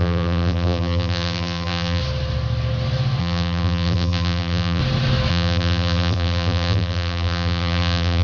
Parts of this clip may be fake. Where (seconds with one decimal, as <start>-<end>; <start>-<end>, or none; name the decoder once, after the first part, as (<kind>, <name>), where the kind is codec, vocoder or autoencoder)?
0.0-2.0 (vocoder, BigVGAN v2); 3.2-4.8; 5.3-8.2